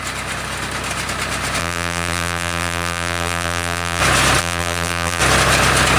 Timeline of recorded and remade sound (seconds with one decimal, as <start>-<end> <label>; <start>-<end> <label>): 0.0-1.6 recorded; 1.6-4.0 remade; 4.0-4.4 recorded; 4.4-5.2 remade; 5.2-6.0 recorded